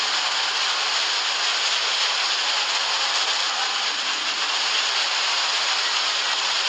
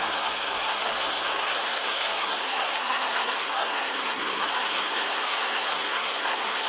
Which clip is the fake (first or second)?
second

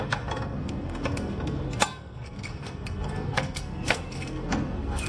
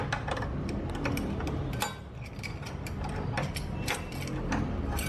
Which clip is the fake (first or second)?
first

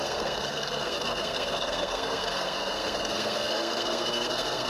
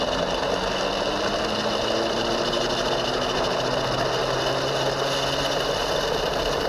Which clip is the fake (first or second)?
first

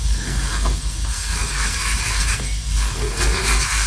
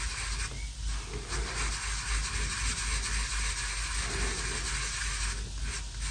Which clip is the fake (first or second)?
first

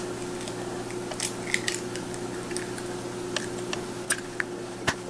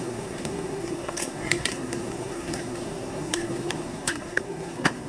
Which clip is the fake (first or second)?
second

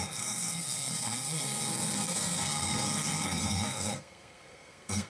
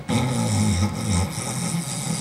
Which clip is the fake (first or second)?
first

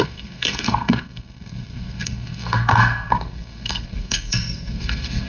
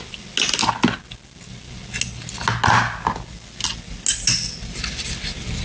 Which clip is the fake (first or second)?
first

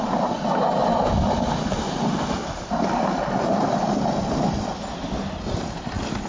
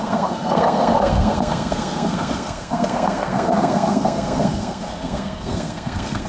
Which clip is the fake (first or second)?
second